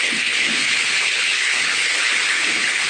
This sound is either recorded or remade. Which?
remade